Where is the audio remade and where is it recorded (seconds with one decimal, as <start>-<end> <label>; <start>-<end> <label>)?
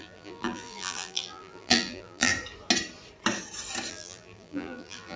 0.0-2.3 remade; 2.3-3.9 recorded; 3.9-5.2 remade